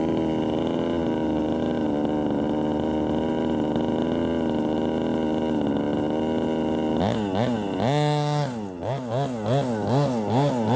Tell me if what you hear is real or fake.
real